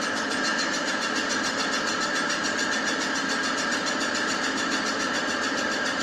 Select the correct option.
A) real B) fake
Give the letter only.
B